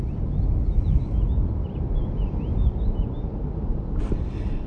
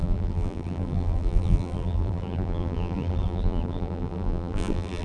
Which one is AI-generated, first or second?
second